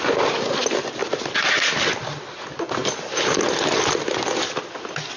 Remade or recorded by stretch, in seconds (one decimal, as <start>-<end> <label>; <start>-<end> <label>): 0.0-5.2 recorded